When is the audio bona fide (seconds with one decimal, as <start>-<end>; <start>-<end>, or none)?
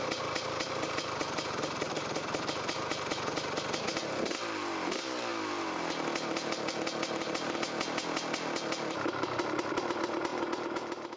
0.0-11.2